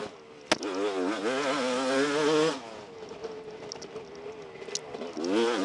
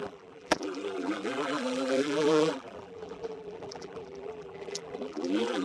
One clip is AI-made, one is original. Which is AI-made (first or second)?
second